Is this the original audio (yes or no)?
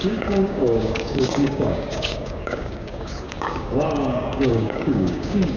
no